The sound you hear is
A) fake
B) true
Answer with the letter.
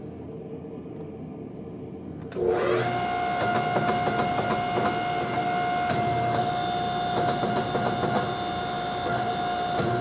B